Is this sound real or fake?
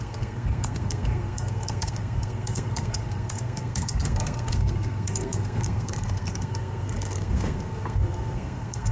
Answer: fake